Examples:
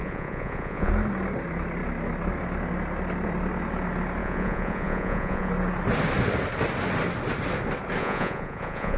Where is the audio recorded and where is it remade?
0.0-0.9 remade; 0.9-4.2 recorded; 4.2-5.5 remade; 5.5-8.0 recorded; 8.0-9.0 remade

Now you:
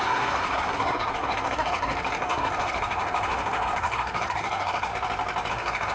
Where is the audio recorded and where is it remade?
0.0-4.9 remade; 4.9-5.5 recorded; 5.5-5.9 remade

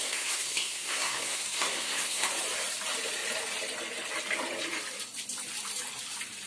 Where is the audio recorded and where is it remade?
0.0-2.3 remade; 2.3-6.5 recorded

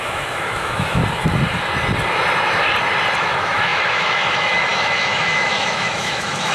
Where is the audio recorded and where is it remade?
0.0-1.0 remade; 1.0-3.2 recorded; 3.2-6.5 remade

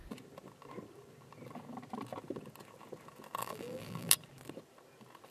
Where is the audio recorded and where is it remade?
0.0-3.4 recorded; 3.4-4.1 remade; 4.1-5.3 recorded

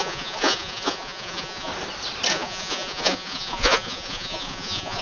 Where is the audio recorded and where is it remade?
0.0-1.7 remade; 1.7-2.3 recorded; 2.3-5.0 remade

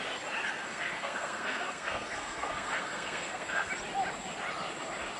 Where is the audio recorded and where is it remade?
0.0-0.6 recorded; 0.6-3.7 remade; 3.7-5.2 recorded